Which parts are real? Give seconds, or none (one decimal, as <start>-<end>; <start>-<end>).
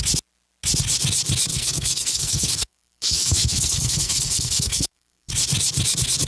0.0-1.5; 5.3-6.3